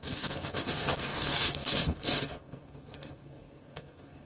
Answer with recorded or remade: remade